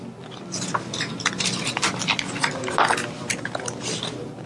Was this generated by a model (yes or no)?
no